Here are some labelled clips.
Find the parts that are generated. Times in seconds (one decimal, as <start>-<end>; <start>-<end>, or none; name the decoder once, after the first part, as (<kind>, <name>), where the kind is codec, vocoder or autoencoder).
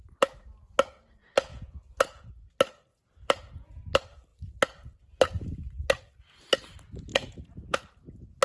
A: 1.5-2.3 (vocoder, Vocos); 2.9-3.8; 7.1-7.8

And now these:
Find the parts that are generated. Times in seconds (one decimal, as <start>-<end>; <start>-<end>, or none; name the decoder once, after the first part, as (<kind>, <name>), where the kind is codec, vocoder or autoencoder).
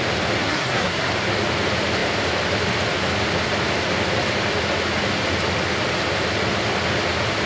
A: 0.4-1.1 (codec, SNAC)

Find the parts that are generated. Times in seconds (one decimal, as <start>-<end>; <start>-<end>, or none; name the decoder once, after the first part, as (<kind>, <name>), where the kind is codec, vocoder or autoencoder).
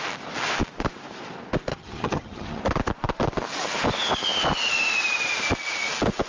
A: 1.7-2.6 (vocoder, HiFi-GAN)